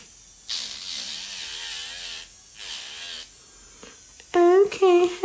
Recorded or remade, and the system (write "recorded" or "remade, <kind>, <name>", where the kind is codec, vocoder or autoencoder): recorded